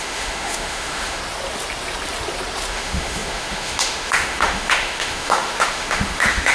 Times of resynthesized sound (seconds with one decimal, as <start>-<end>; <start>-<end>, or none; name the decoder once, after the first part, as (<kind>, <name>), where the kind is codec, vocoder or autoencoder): 0.0-1.2 (autoencoder, DAC-VAE); 2.7-6.5